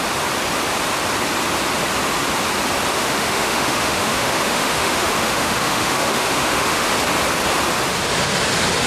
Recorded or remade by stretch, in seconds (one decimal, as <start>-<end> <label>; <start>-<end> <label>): 0.0-2.9 recorded; 2.9-6.9 remade; 6.9-8.9 recorded